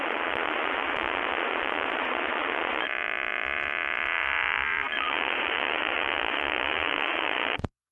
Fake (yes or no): yes